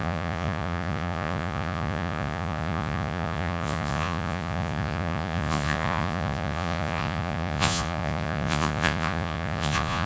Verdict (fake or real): fake